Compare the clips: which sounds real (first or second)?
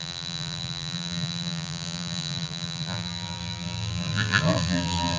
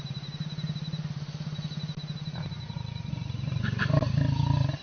second